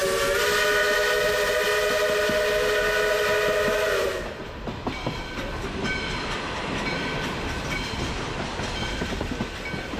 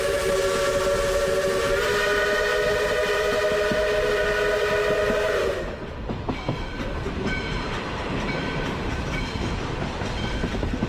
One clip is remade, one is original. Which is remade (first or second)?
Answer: second